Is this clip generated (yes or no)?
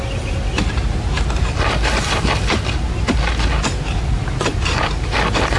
no